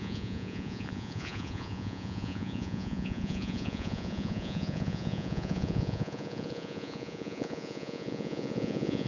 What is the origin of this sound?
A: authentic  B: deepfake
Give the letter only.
B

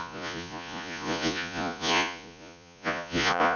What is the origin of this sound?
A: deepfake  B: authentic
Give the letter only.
A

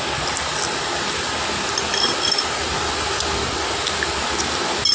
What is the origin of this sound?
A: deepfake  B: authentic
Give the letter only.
B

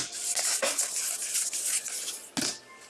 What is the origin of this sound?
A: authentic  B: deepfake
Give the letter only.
A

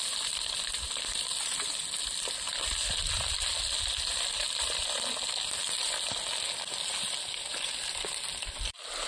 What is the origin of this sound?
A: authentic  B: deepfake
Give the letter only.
A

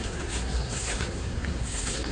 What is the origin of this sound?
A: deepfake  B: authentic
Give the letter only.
A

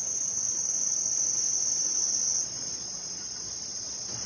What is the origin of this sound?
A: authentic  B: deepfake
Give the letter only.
B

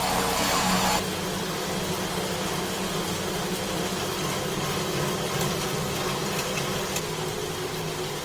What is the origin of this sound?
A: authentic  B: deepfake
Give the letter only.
A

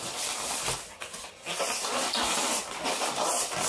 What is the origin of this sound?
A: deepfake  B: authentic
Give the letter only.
B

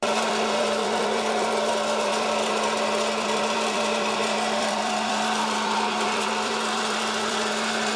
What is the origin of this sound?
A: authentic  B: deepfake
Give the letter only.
B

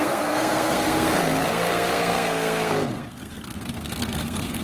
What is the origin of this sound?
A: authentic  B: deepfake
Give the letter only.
B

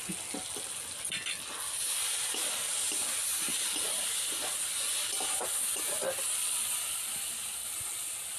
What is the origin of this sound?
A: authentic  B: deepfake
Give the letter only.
A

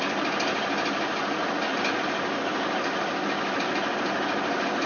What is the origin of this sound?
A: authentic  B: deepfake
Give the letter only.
A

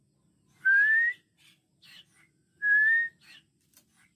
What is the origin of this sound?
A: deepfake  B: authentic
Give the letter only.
B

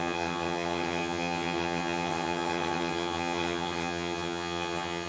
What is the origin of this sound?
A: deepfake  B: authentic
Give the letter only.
A